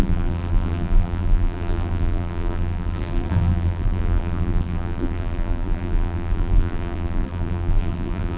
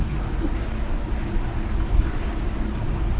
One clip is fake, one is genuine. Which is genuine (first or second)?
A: second